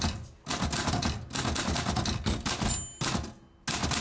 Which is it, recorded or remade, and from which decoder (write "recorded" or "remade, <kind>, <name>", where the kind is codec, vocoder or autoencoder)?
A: recorded